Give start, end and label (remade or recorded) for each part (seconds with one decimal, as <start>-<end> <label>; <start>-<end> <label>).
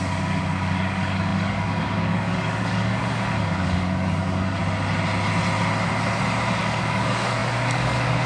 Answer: 0.0-4.6 remade; 4.6-6.6 recorded; 6.6-8.3 remade